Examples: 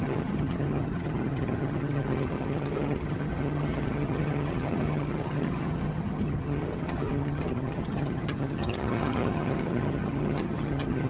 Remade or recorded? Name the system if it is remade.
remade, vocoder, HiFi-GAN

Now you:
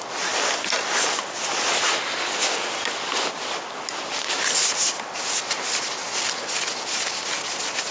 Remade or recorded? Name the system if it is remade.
recorded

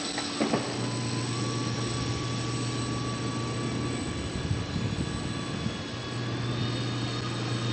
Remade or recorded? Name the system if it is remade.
recorded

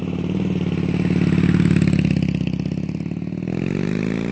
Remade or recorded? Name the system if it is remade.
recorded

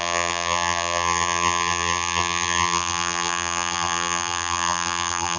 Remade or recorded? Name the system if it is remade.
remade, vocoder, BigVGAN v2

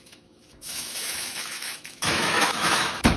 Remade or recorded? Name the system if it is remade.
remade, autoencoder, DAC-VAE